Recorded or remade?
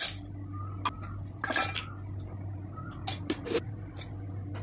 recorded